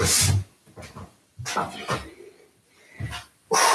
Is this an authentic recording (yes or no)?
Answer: yes